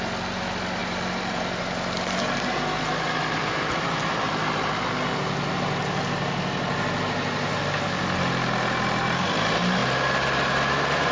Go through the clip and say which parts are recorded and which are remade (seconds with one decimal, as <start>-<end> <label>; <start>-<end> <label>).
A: 0.0-0.8 recorded; 0.8-1.6 remade; 1.6-3.4 recorded; 3.4-4.0 remade; 4.0-11.1 recorded